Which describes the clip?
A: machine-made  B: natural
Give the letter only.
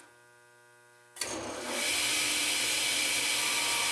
B